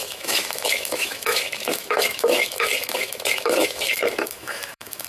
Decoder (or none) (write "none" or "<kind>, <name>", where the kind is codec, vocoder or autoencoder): autoencoder, DAC-VAE